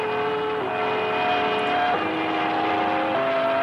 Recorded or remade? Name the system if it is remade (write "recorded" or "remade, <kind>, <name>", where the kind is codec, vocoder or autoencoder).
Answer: recorded